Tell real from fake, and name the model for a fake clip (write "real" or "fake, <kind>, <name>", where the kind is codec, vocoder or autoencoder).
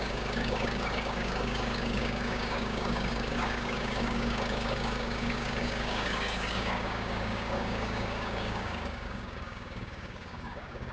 fake, codec, DAC